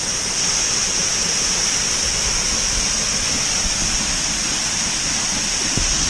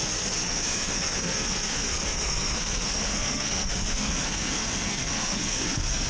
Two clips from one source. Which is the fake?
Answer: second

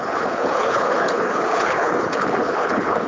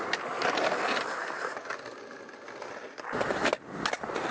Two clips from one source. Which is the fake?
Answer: first